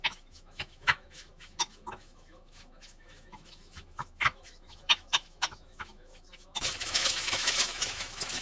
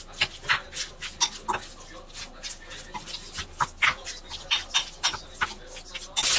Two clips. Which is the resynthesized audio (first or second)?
first